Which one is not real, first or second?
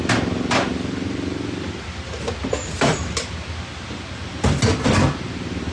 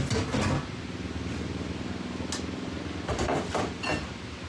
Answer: first